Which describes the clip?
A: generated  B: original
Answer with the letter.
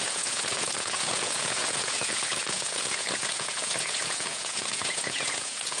A